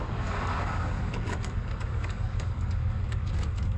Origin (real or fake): fake